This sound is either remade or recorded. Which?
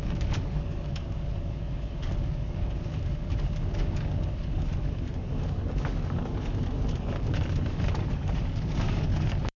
remade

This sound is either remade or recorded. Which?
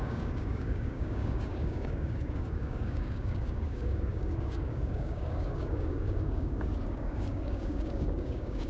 remade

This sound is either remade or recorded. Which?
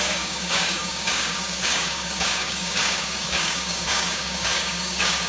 remade